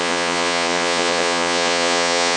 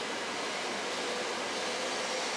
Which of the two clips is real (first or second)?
second